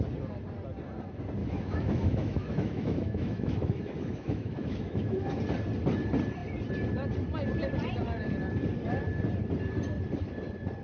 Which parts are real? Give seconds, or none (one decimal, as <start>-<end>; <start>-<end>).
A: 0.0-1.4; 5.4-10.8